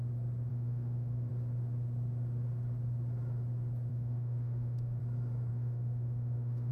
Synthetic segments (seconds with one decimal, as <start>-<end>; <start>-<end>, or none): 0.5-1.3; 3.9-5.0; 5.5-6.7